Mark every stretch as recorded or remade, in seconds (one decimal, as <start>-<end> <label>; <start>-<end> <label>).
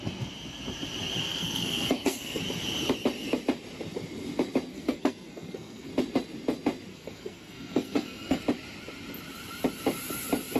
0.0-1.2 recorded; 1.2-2.4 remade; 2.4-4.7 recorded; 4.7-5.9 remade; 5.9-6.9 recorded; 6.9-8.4 remade; 8.4-10.6 recorded